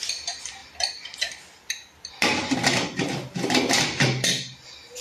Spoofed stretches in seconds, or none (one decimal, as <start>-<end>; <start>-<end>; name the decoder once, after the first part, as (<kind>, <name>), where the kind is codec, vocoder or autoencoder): none